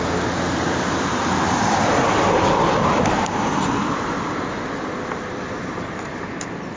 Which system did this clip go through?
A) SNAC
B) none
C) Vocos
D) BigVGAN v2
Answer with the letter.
B